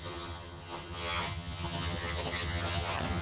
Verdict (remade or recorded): remade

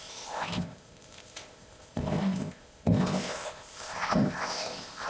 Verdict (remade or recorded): remade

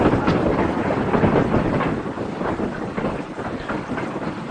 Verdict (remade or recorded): recorded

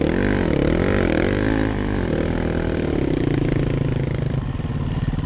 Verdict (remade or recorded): recorded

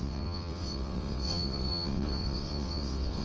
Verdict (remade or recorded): remade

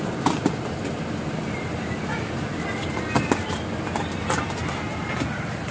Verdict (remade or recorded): recorded